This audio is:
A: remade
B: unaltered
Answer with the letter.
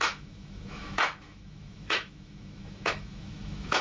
A